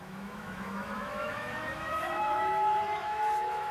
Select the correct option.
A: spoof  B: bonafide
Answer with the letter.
A